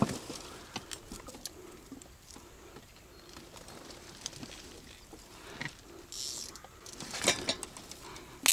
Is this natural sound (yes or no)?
yes